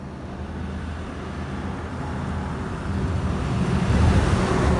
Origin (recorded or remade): recorded